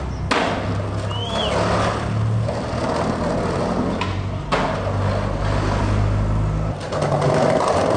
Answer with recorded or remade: recorded